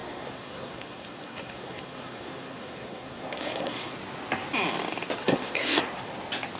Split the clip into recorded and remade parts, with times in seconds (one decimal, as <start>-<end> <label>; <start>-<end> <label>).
0.0-3.9 remade; 3.9-5.2 recorded; 5.2-5.8 remade; 5.8-6.6 recorded